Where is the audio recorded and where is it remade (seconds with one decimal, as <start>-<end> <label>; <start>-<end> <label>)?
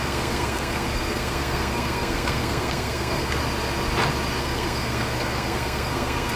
0.0-3.4 remade; 3.4-4.4 recorded; 4.4-6.4 remade